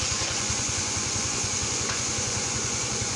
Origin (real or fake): fake